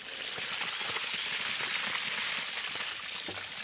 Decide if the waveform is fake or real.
real